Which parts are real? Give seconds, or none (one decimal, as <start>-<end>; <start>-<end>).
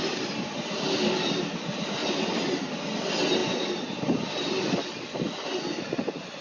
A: 1.4-2.0; 2.6-3.4